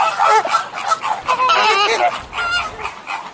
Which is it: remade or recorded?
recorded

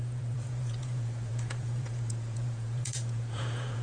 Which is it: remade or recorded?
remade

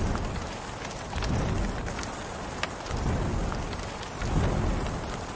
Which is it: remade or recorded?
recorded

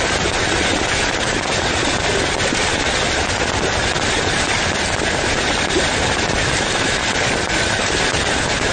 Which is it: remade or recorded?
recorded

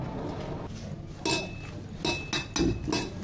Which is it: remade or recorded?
recorded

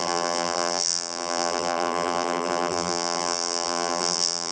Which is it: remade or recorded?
remade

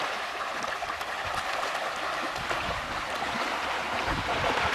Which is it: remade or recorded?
recorded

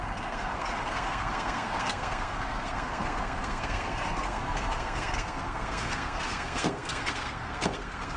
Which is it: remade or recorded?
remade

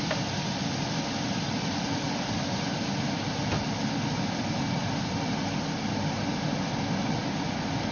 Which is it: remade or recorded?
recorded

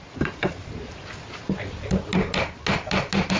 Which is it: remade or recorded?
recorded